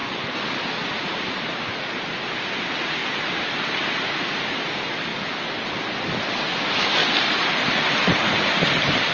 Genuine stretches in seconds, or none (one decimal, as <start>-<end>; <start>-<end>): 1.5-5.1; 5.6-7.0